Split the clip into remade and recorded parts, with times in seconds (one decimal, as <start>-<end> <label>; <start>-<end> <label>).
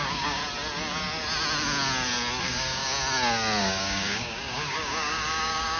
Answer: 0.0-0.4 remade; 0.4-2.4 recorded; 2.4-2.8 remade; 2.8-3.6 recorded; 3.6-5.8 remade